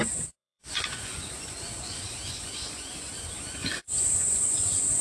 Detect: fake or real fake